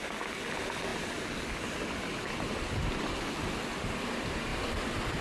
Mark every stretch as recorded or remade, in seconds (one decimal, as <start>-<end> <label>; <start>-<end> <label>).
0.0-5.2 recorded